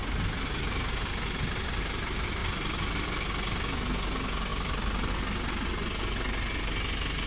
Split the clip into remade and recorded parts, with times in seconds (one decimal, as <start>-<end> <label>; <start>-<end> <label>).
0.0-1.1 remade; 1.1-2.4 recorded; 2.4-3.3 remade; 3.3-4.5 recorded; 4.5-5.1 remade; 5.1-7.3 recorded